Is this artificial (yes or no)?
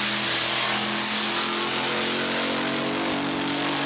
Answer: no